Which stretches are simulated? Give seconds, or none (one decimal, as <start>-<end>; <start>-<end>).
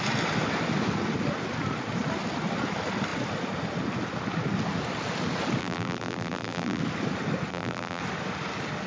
5.6-6.8; 7.5-8.0